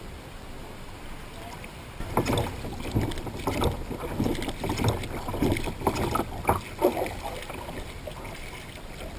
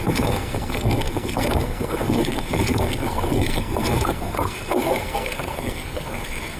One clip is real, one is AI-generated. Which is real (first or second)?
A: first